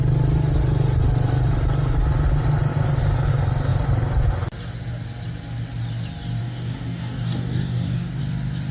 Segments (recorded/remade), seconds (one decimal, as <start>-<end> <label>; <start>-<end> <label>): 0.0-6.4 recorded; 6.4-8.2 remade; 8.2-8.7 recorded